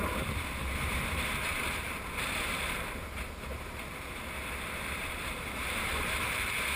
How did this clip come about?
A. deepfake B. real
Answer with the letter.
A